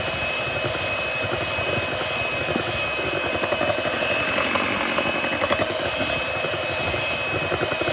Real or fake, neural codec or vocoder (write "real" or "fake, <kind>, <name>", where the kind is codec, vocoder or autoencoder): real